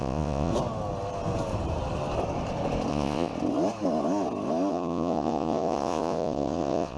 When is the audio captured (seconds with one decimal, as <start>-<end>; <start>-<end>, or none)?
0.5-2.9; 3.3-4.7